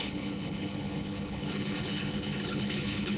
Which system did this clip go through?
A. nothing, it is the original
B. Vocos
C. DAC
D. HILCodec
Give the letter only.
D